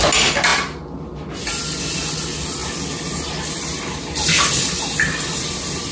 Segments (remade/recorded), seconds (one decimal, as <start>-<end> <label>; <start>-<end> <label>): 0.0-5.9 recorded

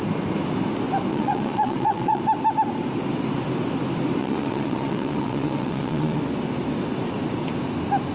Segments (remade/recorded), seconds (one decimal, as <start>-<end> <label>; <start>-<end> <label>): 0.0-1.1 recorded; 1.1-2.2 remade; 2.2-4.2 recorded; 4.2-6.2 remade; 6.2-8.1 recorded